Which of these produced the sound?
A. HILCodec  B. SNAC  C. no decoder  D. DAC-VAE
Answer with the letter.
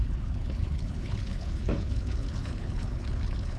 A